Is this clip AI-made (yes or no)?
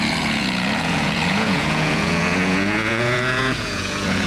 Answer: yes